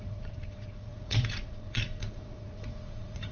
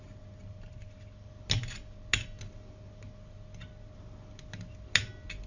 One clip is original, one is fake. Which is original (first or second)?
second